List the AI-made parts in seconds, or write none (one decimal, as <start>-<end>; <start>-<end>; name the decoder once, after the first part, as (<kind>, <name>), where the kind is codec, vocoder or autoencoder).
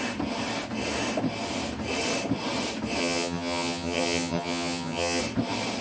3.0-5.2 (vocoder, HiFi-GAN)